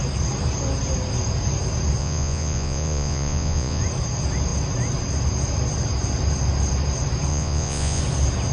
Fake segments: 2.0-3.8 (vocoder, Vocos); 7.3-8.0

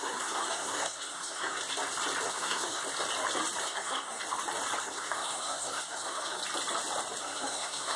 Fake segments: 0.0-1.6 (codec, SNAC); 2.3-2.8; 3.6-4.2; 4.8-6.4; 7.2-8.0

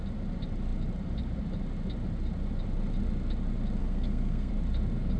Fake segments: 3.8-4.5 (codec, SNAC)